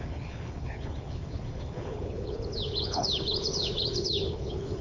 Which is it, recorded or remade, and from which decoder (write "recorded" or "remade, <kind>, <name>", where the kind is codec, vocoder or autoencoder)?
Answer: remade, codec, HILCodec